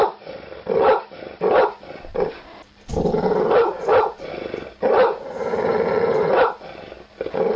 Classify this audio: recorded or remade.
recorded